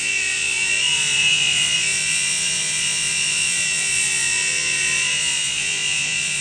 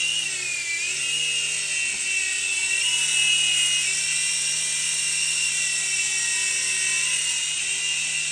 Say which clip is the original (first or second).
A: second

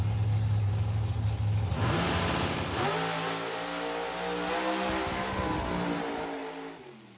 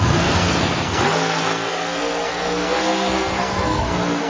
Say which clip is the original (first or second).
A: first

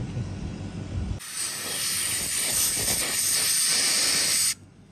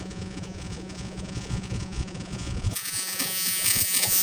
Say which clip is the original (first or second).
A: first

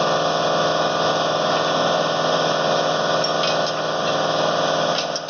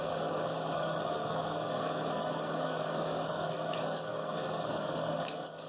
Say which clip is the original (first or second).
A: first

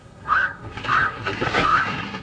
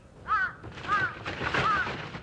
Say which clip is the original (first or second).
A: second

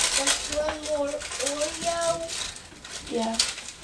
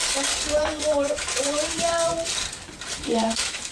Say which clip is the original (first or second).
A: first